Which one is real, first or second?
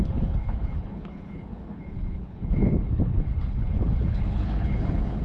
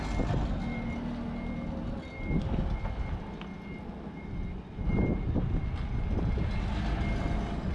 second